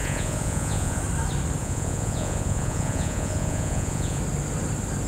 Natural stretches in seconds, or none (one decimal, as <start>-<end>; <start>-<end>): 1.0-1.6; 4.2-5.1